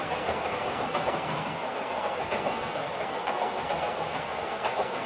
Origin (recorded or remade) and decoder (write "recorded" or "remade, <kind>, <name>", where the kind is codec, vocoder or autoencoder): remade, codec, SNAC